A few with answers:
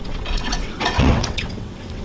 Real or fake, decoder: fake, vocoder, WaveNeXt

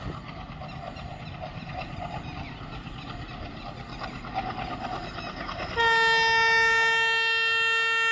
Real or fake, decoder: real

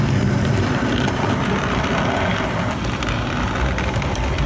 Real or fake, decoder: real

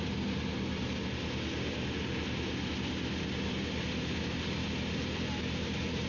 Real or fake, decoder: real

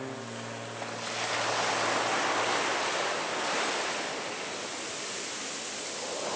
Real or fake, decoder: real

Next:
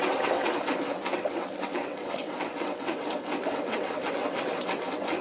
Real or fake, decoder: fake, vocoder, WaveNeXt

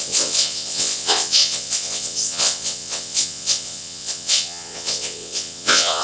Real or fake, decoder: fake, vocoder, WaveNeXt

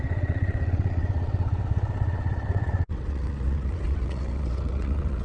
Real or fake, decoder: fake, vocoder, WaveNeXt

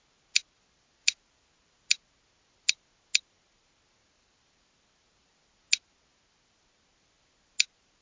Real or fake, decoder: real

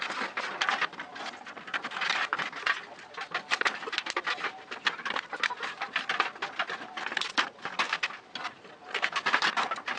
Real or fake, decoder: real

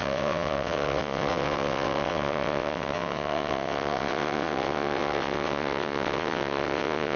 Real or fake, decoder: fake, vocoder, WaveNeXt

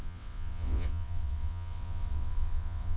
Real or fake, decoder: fake, vocoder, WaveNeXt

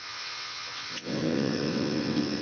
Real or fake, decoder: fake, vocoder, WaveNeXt